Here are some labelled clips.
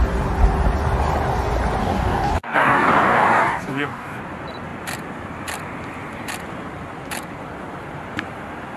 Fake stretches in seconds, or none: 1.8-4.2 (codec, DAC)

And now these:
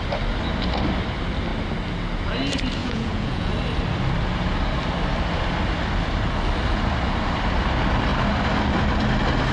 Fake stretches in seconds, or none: 2.8-3.5 (vocoder, Vocos)

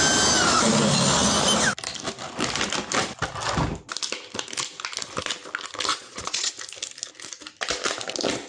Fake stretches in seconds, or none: 5.9-6.5 (vocoder, Vocos)